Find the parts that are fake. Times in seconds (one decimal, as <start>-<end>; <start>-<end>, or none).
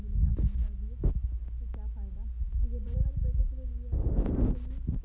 none